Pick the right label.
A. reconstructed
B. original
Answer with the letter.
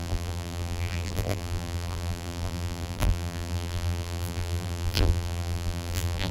A